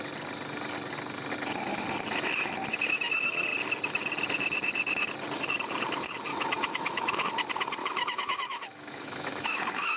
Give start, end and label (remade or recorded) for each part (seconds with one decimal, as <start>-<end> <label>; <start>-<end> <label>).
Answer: 0.0-6.3 recorded; 6.3-7.3 remade; 7.3-7.8 recorded; 7.8-10.0 remade